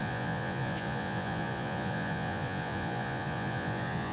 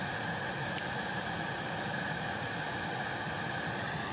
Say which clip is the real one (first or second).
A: second